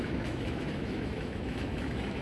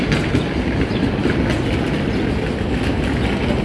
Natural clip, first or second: second